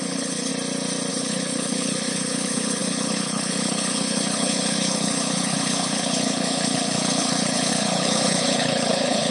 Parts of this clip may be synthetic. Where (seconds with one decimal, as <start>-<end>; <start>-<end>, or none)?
0.0-0.5; 1.1-9.3